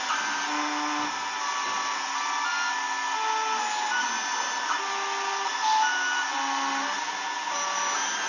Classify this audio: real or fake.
real